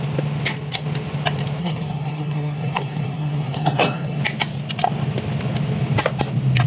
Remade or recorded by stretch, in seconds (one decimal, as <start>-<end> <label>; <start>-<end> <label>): 0.0-1.6 recorded; 1.6-4.2 remade; 4.2-6.7 recorded